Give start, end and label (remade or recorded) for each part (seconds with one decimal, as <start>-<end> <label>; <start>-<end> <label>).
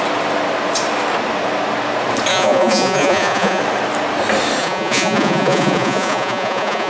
0.0-2.3 recorded; 2.3-3.6 remade; 3.6-4.6 recorded; 4.6-6.9 remade